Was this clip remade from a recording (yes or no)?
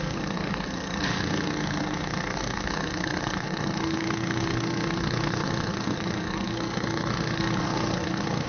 yes